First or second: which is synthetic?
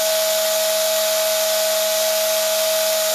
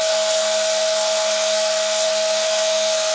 second